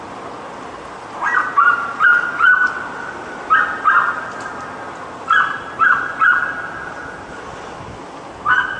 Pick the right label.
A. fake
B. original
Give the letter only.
B